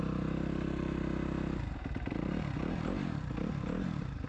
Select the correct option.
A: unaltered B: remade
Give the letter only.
B